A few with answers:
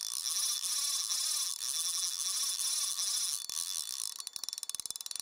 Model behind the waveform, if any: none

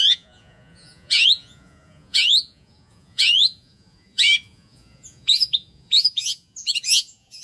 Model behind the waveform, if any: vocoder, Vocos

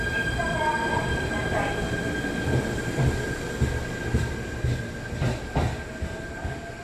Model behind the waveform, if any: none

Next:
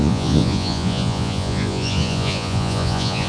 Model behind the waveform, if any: vocoder, Vocos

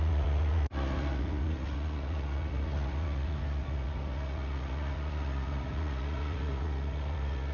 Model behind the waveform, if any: vocoder, Vocos